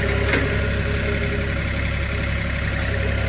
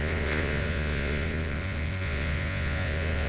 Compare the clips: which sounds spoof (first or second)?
second